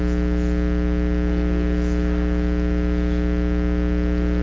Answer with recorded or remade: recorded